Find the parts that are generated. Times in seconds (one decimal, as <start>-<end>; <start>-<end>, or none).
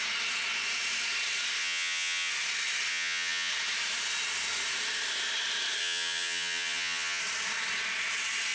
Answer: 1.6-2.3; 2.9-3.5; 5.8-7.2